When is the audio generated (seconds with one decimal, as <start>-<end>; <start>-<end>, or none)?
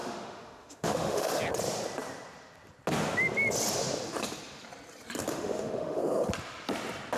0.0-1.3; 5.3-6.0